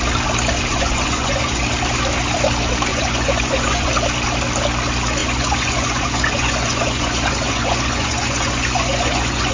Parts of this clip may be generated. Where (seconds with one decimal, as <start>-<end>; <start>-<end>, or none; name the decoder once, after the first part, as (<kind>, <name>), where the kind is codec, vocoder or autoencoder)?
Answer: 0.7-1.6 (vocoder, Vocos); 2.9-3.9; 5.2-9.5